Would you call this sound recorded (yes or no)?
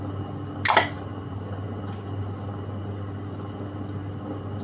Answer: yes